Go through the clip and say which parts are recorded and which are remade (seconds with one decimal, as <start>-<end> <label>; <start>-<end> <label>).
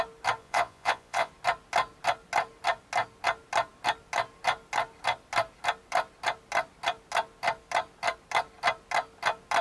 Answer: 0.0-0.4 recorded; 0.4-1.3 remade; 1.3-9.6 recorded